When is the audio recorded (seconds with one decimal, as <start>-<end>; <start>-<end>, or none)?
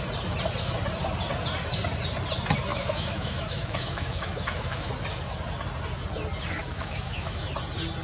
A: 0.0-2.7; 4.9-6.6; 7.5-8.0